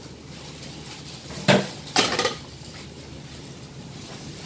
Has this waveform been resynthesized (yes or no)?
no